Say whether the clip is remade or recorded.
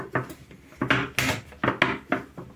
recorded